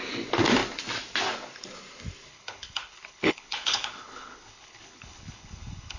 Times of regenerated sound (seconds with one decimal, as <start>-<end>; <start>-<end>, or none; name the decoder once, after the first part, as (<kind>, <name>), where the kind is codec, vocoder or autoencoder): 2.3-6.0 (codec, HILCodec)